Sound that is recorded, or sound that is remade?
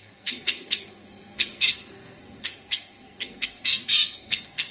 remade